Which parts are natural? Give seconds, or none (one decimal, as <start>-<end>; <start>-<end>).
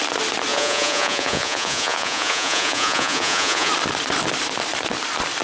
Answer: 0.0-0.5; 3.7-5.4